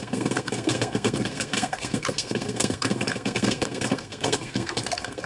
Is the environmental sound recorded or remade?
remade